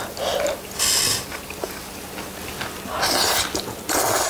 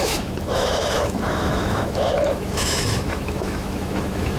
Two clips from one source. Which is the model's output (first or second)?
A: second